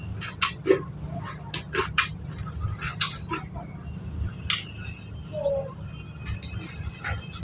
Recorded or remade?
recorded